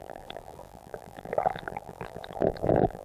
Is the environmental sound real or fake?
fake